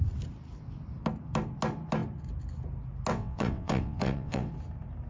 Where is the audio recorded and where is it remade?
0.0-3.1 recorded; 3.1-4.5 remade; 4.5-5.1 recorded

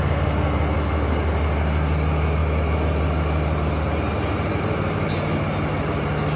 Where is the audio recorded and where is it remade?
0.0-6.4 recorded

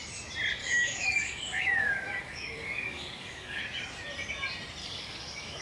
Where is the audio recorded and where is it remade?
0.0-0.6 recorded; 0.6-3.6 remade; 3.6-4.8 recorded; 4.8-5.6 remade

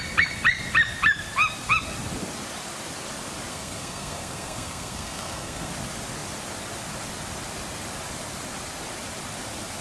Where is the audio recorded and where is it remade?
0.0-3.5 recorded; 3.5-5.7 remade; 5.7-9.8 recorded